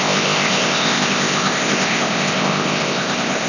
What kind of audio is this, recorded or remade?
remade